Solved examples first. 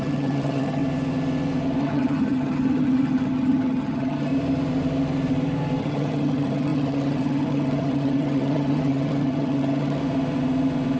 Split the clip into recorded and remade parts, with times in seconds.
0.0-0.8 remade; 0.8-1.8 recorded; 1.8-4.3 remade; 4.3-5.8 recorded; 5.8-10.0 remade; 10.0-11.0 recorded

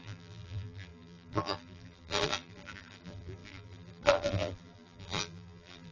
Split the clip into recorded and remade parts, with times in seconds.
0.0-5.9 remade

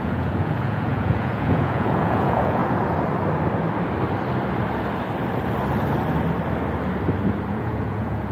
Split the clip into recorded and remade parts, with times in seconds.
0.0-2.6 remade; 2.6-7.5 recorded; 7.5-8.3 remade

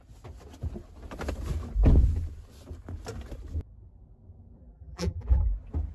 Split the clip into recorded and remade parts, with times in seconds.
0.0-4.6 recorded; 4.6-5.4 remade; 5.4-5.9 recorded

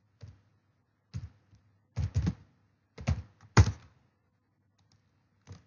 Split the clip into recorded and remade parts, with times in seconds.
0.0-5.7 recorded

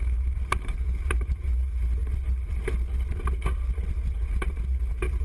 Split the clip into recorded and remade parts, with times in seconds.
0.0-2.0 remade; 2.0-3.9 recorded; 3.9-5.2 remade

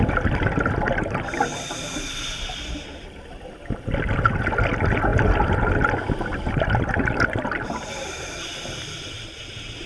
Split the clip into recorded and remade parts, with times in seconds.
0.0-9.9 recorded